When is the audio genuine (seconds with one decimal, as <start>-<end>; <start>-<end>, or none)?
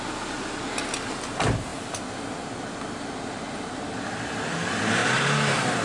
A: 0.0-5.8